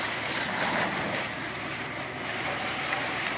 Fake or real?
fake